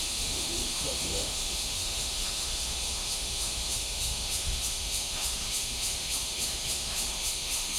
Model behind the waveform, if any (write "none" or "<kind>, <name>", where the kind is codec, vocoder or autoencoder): autoencoder, DAC-VAE